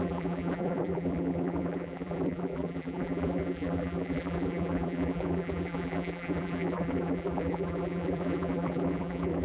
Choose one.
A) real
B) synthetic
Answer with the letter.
B